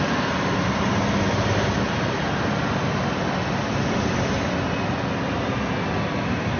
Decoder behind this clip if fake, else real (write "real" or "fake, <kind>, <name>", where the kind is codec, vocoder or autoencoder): real